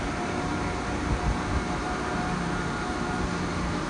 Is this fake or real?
fake